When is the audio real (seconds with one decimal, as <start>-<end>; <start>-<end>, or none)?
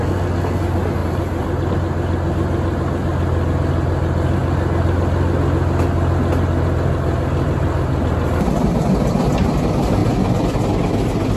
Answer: 0.0-1.0; 1.7-11.4